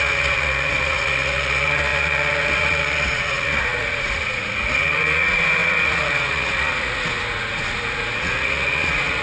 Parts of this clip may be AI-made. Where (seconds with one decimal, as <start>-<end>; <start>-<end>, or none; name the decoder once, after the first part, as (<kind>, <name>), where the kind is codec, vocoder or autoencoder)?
0.0-9.2 (vocoder, Vocos)